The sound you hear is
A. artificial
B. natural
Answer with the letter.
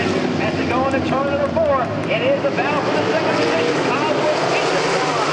B